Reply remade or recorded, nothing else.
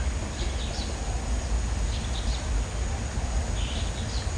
recorded